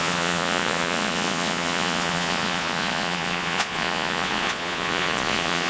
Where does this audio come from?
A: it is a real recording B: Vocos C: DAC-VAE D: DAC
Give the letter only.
B